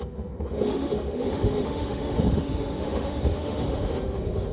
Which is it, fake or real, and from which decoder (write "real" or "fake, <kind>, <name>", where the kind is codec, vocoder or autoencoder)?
fake, autoencoder, DAC-VAE